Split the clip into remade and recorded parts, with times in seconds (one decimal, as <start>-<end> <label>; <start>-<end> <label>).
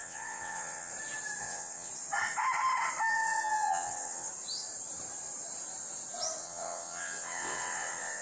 0.0-0.9 remade; 0.9-1.4 recorded; 1.4-1.9 remade; 1.9-3.1 recorded; 3.1-4.3 remade; 4.3-6.4 recorded; 6.4-8.2 remade